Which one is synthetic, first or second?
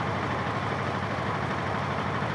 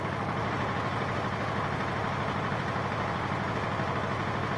first